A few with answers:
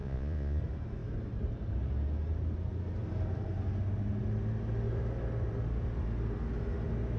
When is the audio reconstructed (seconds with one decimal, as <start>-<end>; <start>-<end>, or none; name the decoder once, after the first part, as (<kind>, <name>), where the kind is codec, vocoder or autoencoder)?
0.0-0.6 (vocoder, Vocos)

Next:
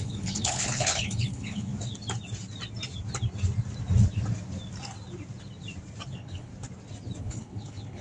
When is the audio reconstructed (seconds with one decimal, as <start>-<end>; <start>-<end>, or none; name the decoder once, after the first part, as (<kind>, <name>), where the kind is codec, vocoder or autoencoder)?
0.0-1.7 (codec, HILCodec); 6.1-6.5; 7.2-8.0

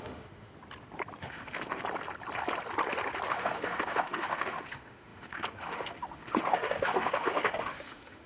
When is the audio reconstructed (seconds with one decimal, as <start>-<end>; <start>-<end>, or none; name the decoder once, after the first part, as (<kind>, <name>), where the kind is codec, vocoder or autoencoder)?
0.0-0.5 (autoencoder, DAC-VAE); 1.2-1.8; 3.3-8.3